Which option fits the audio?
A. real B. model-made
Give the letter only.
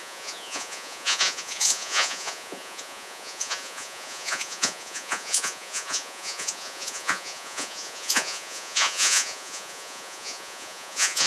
B